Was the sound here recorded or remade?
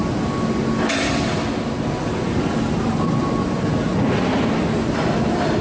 recorded